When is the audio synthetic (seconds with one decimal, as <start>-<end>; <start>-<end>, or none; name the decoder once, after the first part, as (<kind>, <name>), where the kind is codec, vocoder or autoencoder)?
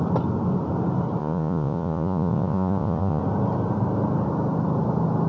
1.2-3.2 (vocoder, Vocos)